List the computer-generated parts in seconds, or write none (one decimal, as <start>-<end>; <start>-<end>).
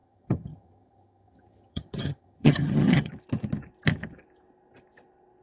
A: 0.0-3.1